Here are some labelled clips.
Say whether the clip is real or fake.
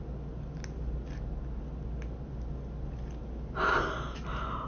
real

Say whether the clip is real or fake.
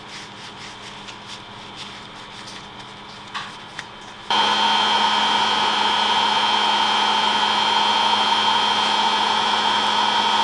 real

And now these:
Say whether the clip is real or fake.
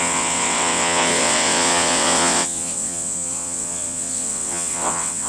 fake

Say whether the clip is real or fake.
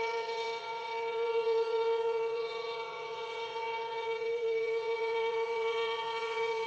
fake